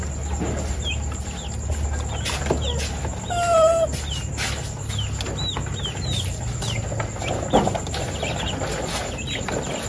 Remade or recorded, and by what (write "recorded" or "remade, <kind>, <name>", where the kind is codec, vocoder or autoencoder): recorded